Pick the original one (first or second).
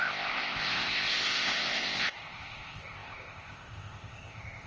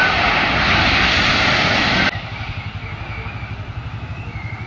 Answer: second